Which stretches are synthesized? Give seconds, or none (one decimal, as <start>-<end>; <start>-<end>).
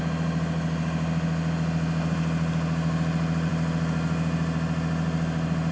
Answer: none